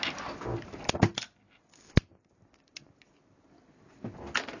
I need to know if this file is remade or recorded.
recorded